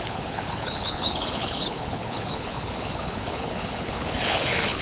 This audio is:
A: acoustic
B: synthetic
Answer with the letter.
B